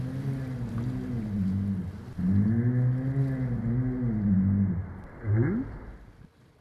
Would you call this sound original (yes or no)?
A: yes